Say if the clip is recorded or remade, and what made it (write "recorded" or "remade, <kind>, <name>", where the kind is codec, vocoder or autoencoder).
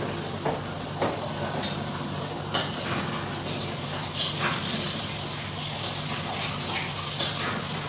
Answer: recorded